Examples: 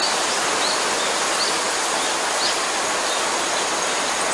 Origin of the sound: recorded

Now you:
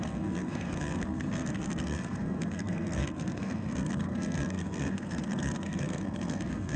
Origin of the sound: remade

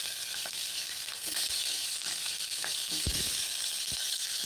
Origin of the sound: remade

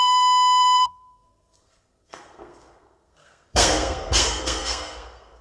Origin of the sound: remade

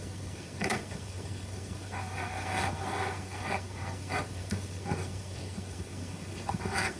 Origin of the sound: remade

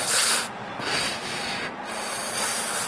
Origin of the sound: recorded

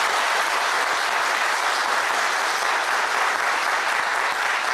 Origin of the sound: recorded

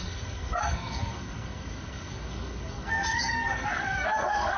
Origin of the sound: remade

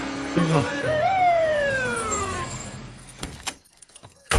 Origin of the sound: remade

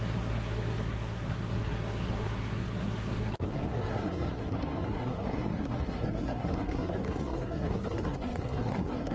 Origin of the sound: remade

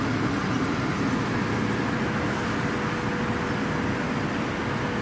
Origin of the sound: recorded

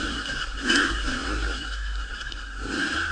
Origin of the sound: remade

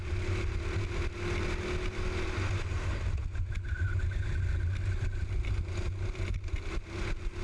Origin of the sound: recorded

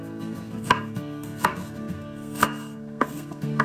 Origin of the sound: remade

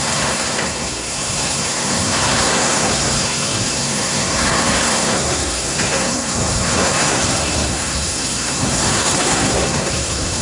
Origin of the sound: remade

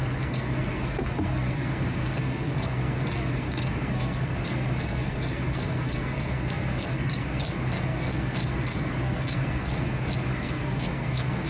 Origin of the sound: remade